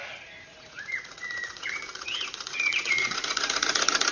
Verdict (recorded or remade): remade